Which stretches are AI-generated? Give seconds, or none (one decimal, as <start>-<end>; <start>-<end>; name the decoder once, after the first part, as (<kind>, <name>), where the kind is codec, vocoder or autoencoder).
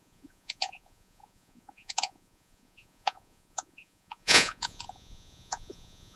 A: 0.0-6.2 (vocoder, Vocos)